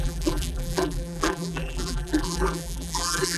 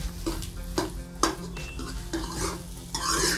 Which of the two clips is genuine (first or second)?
second